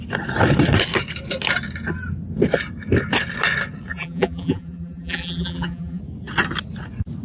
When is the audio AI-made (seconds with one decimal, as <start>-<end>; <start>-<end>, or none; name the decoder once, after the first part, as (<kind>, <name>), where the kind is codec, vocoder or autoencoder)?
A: 3.9-6.0 (vocoder, BigVGAN v2)